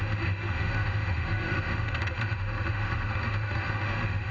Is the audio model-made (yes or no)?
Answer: yes